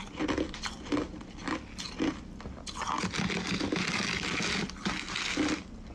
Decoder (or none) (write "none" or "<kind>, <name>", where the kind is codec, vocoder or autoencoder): none